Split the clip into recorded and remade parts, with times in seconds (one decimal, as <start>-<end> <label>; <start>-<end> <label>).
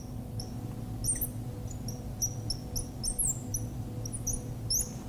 0.0-5.1 recorded